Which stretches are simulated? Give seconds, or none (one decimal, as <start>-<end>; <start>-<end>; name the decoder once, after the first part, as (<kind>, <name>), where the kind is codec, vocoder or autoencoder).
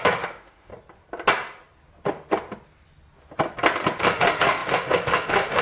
0.0-0.7 (autoencoder, DAC-VAE); 4.0-5.6